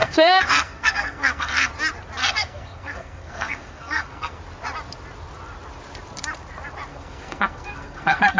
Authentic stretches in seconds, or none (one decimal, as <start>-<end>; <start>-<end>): 1.7-2.2; 4.4-6.9